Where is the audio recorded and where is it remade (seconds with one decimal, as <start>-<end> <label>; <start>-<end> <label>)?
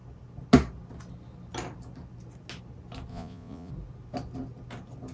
0.0-3.1 recorded; 3.1-3.7 remade; 3.7-5.1 recorded